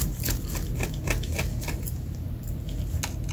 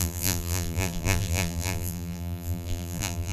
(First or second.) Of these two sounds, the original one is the first